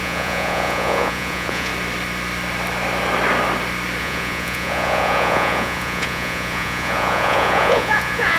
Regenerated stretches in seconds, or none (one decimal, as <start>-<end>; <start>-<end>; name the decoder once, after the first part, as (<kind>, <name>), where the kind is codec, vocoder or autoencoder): 0.0-1.7 (vocoder, Vocos); 4.0-8.4